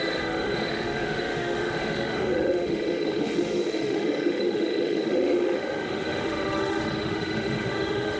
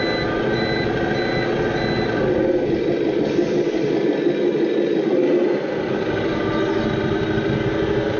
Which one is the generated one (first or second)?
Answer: first